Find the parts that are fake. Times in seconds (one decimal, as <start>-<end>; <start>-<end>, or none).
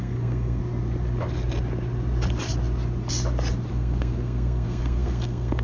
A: 0.0-0.6; 3.7-5.6